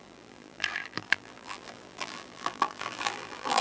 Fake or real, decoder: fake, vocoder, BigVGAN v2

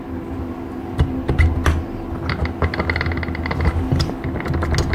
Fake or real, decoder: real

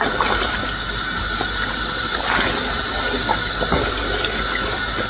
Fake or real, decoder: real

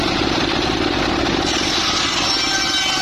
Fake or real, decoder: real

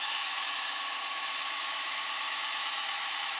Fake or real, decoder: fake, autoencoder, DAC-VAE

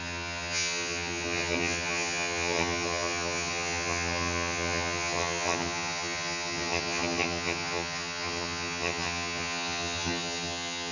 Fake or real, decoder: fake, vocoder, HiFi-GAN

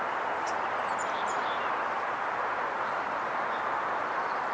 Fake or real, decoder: fake, vocoder, BigVGAN v2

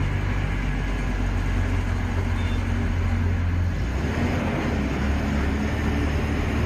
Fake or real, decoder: real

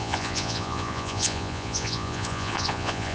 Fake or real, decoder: fake, vocoder, Vocos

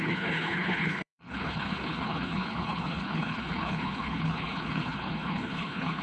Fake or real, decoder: fake, codec, HILCodec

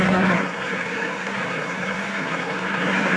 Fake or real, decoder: fake, codec, SNAC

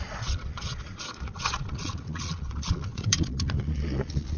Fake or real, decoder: fake, vocoder, Vocos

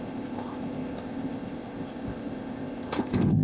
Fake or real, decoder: fake, codec, ZipCodec